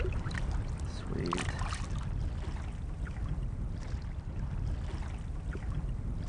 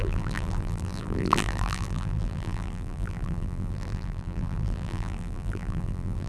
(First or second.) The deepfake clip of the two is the second